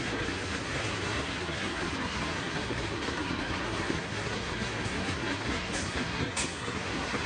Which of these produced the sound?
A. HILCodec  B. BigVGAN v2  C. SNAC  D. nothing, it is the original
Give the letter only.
C